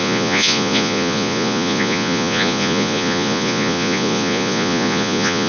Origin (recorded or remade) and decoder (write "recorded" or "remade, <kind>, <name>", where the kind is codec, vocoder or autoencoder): remade, vocoder, Vocos